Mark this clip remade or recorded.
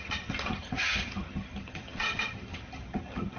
remade